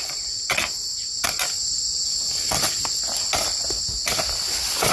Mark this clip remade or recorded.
recorded